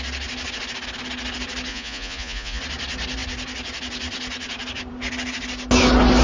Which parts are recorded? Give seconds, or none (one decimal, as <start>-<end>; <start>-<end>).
0.0-1.7; 2.6-6.2